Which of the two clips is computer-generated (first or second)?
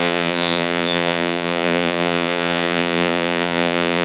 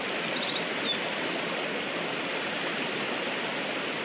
first